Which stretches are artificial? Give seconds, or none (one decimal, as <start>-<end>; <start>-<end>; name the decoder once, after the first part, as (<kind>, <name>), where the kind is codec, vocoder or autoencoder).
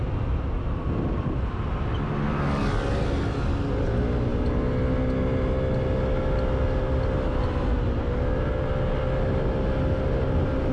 none